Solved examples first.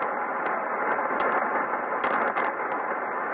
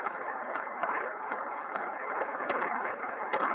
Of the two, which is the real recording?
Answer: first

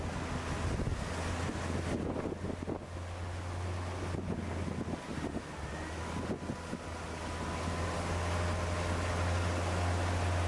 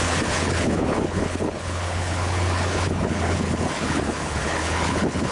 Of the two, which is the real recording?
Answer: first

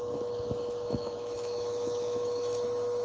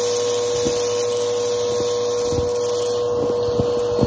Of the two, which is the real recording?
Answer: second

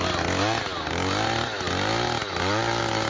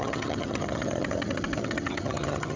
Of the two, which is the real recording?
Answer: first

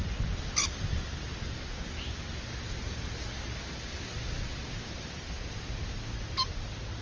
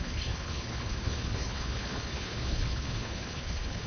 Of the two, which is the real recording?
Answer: first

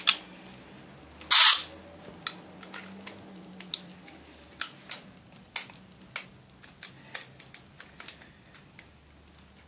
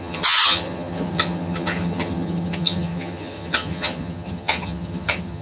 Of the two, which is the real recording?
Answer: first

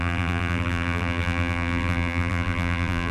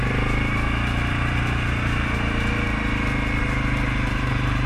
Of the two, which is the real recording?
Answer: second